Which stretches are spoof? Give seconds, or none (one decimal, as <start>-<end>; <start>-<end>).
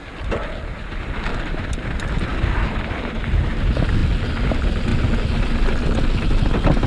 none